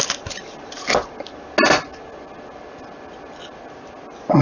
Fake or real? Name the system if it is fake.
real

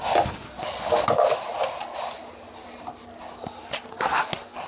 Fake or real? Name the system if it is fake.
real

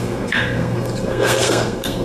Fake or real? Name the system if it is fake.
fake, codec, SNAC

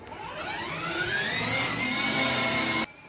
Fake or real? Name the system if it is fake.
real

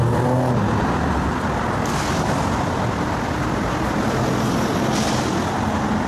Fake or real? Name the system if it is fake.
real